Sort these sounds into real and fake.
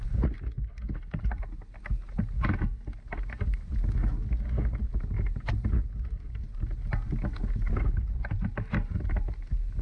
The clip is real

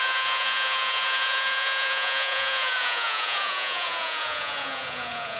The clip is fake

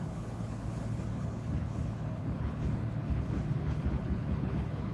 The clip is fake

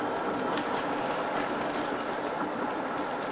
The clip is fake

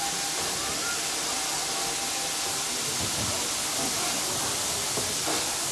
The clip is real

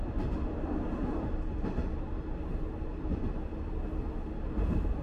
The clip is real